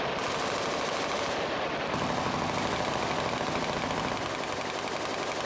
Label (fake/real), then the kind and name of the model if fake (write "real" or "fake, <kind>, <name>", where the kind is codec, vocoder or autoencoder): real